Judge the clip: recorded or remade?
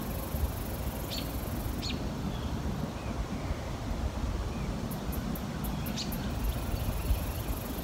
recorded